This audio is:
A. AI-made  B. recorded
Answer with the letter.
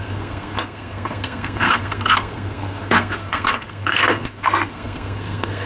A